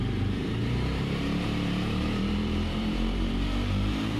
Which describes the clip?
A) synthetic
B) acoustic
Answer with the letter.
A